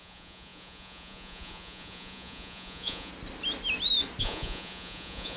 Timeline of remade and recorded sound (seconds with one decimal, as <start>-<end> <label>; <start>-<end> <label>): 0.0-3.1 remade; 3.1-4.2 recorded; 4.2-5.4 remade